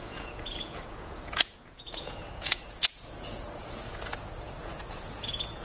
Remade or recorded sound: remade